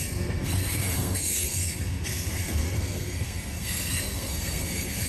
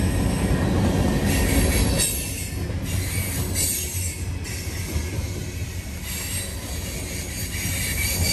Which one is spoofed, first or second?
first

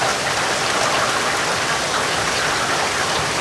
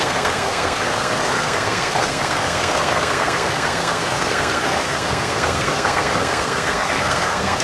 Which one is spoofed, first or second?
second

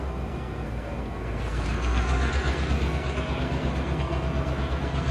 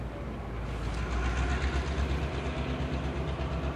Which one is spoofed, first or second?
first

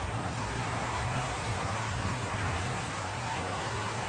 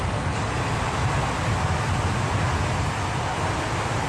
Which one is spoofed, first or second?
first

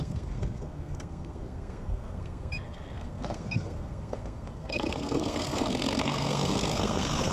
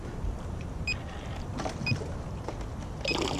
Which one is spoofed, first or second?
first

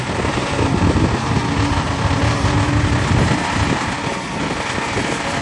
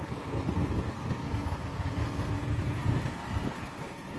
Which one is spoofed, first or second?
second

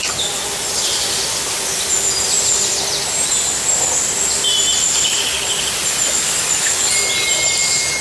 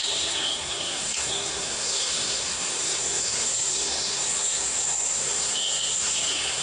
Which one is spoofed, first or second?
second